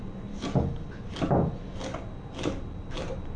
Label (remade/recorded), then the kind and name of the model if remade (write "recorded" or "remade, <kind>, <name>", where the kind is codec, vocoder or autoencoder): recorded